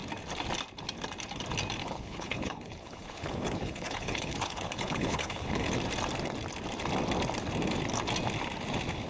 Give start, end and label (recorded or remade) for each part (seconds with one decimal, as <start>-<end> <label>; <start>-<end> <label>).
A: 0.0-1.8 recorded; 1.8-5.7 remade; 5.7-9.1 recorded